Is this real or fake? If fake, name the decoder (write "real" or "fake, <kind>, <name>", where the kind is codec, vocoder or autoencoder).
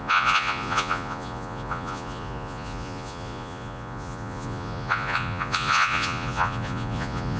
fake, vocoder, Vocos